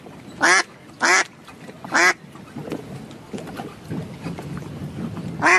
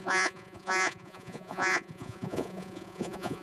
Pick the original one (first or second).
first